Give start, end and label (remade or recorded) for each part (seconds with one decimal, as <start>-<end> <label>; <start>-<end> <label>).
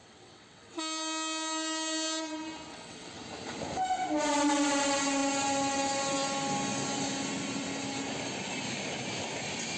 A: 0.0-0.8 remade; 0.8-2.7 recorded; 2.7-3.2 remade; 3.2-9.8 recorded